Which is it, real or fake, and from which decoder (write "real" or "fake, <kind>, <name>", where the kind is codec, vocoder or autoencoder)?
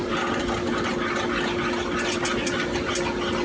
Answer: real